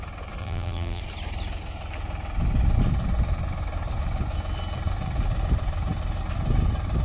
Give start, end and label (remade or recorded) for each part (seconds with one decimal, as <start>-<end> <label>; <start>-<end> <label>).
0.0-0.4 recorded; 0.4-1.0 remade; 1.0-7.0 recorded